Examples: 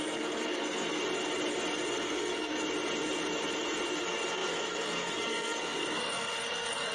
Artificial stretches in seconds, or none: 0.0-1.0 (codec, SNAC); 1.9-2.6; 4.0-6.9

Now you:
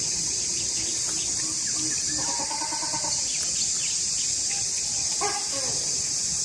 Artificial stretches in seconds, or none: none

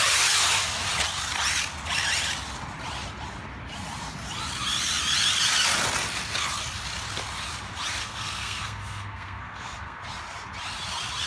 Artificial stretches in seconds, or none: 8.0-10.0 (codec, SNAC)